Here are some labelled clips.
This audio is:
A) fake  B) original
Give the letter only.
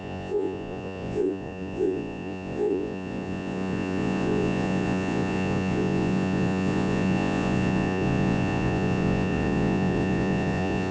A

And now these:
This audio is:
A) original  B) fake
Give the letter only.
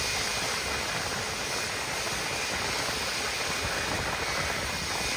A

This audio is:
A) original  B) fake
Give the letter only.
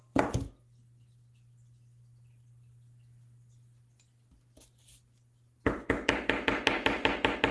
A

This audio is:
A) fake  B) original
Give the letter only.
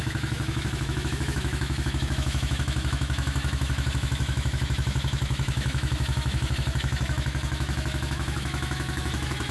A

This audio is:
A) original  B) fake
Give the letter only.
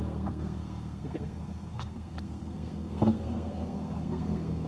B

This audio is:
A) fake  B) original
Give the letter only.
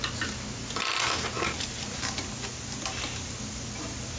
B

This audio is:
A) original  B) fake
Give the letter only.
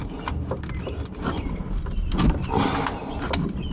A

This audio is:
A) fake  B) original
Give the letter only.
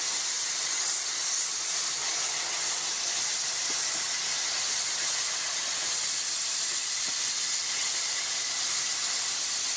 B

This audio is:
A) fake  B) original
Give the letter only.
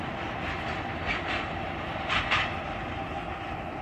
B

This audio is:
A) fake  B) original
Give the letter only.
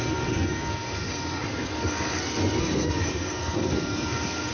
A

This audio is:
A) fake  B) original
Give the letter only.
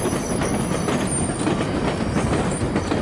B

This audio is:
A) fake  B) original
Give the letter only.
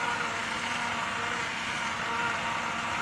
B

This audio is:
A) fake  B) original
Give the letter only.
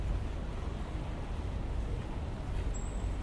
B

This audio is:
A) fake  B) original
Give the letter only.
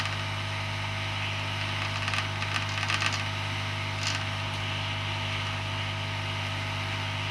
B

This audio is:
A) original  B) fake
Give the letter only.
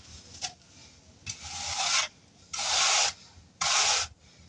A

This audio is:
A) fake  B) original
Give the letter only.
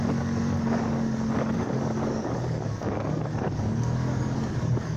A